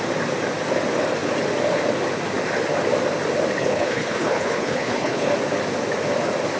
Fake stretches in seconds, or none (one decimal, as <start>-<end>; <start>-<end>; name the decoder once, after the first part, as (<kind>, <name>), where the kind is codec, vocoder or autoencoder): 3.6-5.3 (codec, HILCodec)